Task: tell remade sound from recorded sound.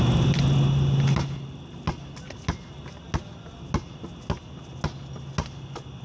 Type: recorded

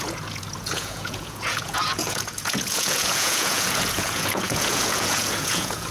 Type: remade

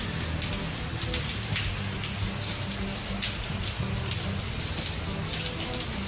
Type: recorded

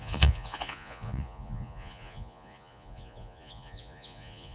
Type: remade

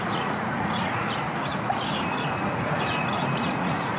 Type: remade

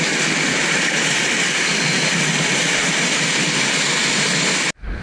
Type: recorded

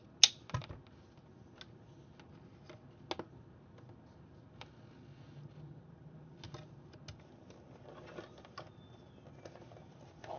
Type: recorded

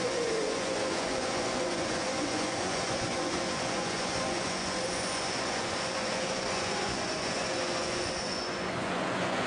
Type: remade